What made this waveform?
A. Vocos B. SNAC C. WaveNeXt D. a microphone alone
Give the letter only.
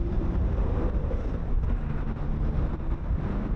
D